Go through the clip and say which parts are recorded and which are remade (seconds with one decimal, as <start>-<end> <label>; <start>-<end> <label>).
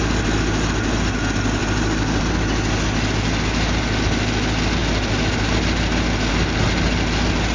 0.0-1.6 recorded; 1.6-2.2 remade; 2.2-7.5 recorded